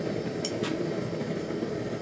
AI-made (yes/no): no